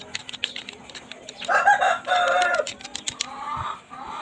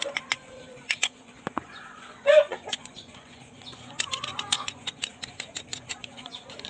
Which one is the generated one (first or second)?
second